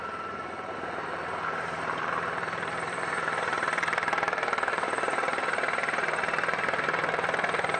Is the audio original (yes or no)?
no